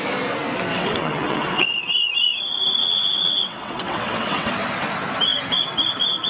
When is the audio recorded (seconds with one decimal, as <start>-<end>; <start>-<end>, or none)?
0.0-0.7; 1.9-2.8; 4.5-6.3